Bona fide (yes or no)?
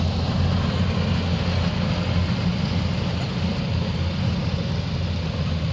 yes